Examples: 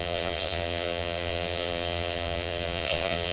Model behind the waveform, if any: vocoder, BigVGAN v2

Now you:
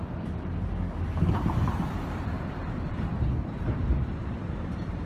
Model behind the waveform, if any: vocoder, BigVGAN v2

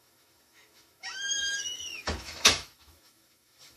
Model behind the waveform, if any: autoencoder, DAC-VAE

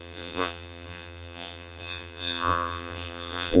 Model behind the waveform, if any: vocoder, BigVGAN v2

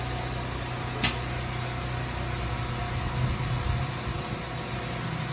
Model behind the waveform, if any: none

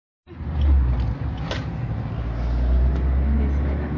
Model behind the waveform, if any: none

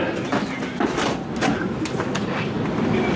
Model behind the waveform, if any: none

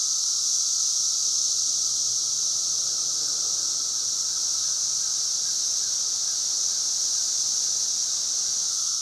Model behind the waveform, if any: none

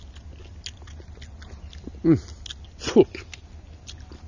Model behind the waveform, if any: none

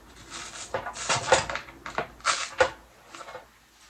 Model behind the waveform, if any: none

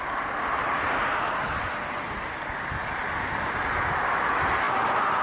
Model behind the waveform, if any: none